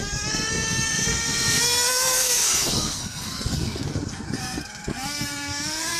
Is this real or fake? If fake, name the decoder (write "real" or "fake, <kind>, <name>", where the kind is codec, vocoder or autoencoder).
fake, codec, SNAC